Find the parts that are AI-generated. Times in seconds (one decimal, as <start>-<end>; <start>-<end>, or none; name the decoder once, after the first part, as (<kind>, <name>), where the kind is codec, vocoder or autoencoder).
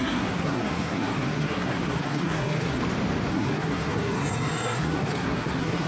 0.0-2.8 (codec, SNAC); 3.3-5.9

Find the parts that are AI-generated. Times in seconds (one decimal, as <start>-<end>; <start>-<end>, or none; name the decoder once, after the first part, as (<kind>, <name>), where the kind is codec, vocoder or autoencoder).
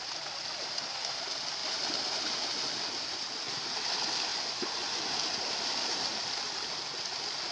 4.3-5.0 (vocoder, Vocos)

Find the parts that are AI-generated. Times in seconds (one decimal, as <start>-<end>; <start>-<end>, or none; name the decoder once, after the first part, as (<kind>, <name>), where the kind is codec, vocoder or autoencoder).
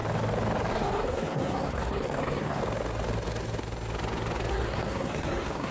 0.7-2.6 (codec, SNAC); 4.5-5.7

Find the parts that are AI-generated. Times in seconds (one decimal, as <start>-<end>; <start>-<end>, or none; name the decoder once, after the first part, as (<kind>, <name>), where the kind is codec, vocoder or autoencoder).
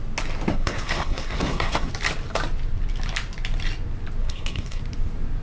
0.5-1.9 (codec, SNAC); 4.2-4.8